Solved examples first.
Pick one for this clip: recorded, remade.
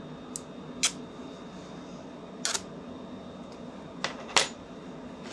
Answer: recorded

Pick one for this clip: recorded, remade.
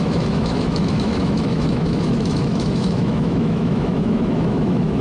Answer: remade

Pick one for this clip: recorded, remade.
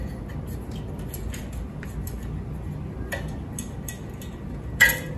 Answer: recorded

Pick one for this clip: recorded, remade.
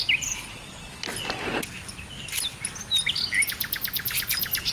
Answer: recorded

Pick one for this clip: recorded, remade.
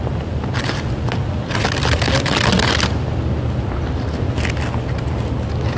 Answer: recorded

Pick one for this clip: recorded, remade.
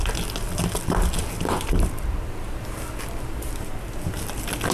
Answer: recorded